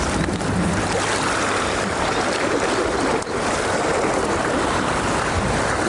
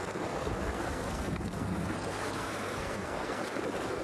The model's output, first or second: second